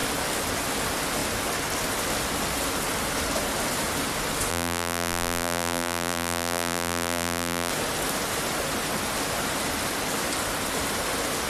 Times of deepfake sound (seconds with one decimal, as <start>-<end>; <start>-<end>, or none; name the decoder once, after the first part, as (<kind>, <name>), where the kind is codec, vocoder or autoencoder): 4.5-7.7 (vocoder, BigVGAN v2)